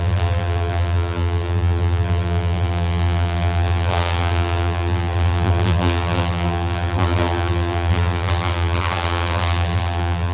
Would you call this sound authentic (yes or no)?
no